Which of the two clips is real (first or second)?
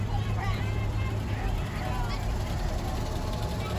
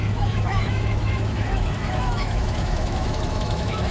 first